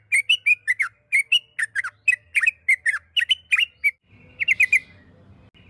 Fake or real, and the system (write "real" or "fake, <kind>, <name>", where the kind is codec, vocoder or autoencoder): real